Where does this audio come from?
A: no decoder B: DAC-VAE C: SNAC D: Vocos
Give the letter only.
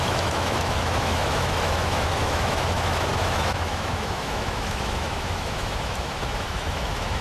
B